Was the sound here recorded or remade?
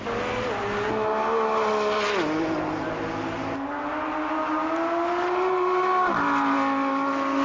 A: recorded